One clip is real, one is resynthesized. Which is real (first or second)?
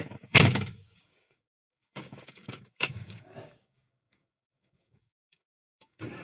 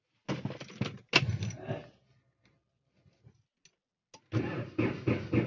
second